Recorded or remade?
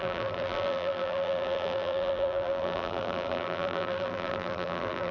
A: remade